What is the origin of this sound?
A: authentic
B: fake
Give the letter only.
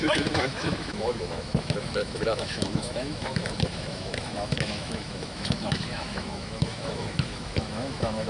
B